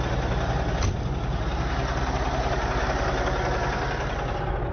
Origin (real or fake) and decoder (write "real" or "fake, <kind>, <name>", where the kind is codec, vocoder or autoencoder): real